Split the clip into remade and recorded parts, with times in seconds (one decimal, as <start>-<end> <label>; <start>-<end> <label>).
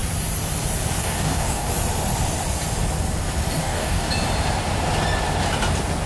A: 0.0-1.0 recorded; 1.0-1.7 remade; 1.7-3.6 recorded; 3.6-4.1 remade; 4.1-6.1 recorded